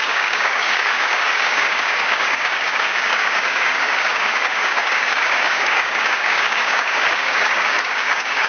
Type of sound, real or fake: fake